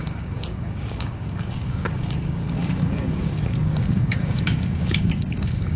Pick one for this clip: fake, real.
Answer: fake